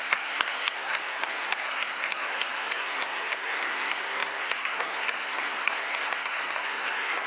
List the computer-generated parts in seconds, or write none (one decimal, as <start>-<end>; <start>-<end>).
0.0-7.3